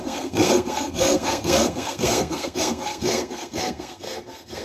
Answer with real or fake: fake